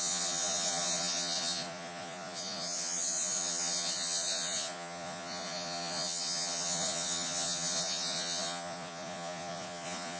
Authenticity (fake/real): fake